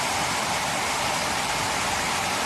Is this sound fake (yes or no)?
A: yes